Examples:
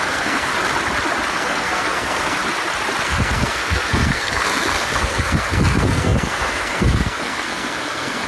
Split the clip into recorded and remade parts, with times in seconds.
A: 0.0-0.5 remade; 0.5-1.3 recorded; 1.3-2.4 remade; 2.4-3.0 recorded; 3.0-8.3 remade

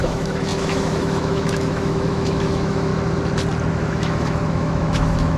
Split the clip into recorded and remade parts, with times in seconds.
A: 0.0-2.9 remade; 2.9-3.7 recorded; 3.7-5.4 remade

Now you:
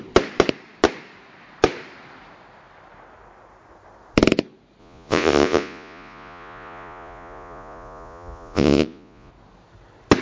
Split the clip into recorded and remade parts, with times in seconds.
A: 0.0-4.8 recorded; 4.8-9.3 remade; 9.3-10.2 recorded

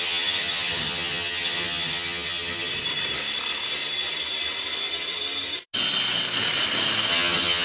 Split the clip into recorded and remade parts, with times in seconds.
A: 0.0-2.7 remade; 2.7-7.1 recorded; 7.1-7.6 remade

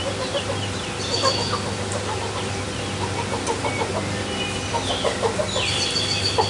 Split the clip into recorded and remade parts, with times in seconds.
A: 0.0-6.5 recorded